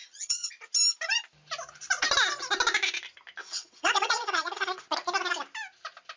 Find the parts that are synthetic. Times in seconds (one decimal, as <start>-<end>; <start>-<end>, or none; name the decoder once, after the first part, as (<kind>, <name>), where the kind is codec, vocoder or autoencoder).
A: 0.0-0.5 (vocoder, WaveNeXt); 3.4-4.8